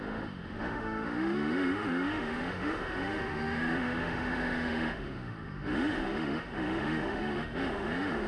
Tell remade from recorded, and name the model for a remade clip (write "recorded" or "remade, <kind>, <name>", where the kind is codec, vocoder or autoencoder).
remade, autoencoder, DAC-VAE